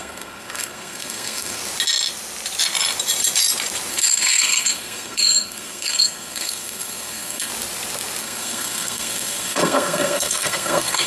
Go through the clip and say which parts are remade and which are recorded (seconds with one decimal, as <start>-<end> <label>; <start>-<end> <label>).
0.0-1.6 remade; 1.6-3.9 recorded; 3.9-7.5 remade; 7.5-8.2 recorded; 8.2-11.1 remade